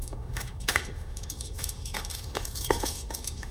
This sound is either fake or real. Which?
fake